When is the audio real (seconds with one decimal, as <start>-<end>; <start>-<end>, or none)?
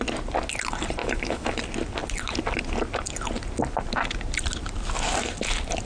0.0-1.0; 1.6-5.8